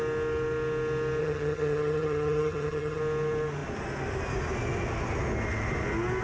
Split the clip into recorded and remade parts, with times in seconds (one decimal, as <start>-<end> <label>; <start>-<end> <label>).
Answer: 0.0-1.2 recorded; 1.2-3.0 remade; 3.0-6.2 recorded